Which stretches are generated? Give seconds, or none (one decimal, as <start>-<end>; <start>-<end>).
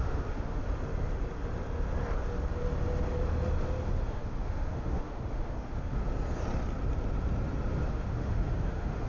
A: 0.0-0.6; 4.1-6.0; 7.9-9.1